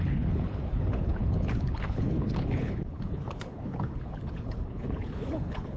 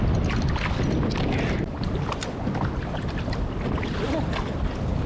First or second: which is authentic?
second